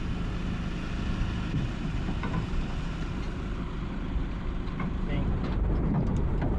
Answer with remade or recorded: remade